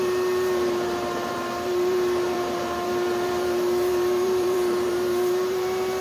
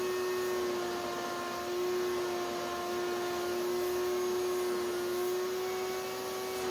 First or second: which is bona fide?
second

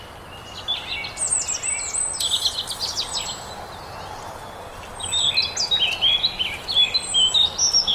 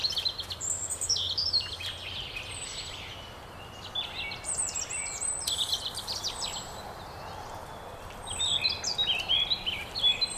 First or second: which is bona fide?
first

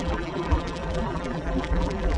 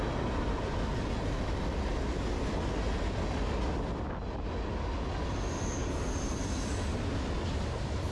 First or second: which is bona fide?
second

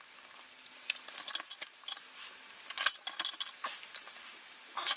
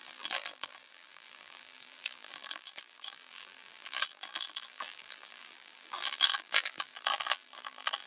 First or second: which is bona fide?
first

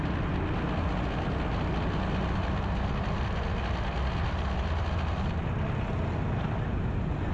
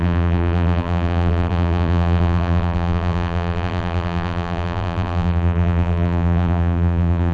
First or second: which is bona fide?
first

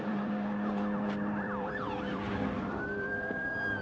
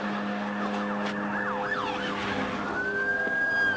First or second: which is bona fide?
second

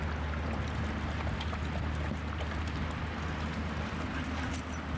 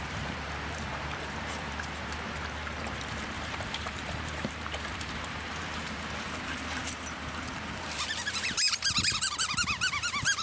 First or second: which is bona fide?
first